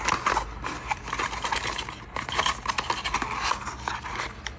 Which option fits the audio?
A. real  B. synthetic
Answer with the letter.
A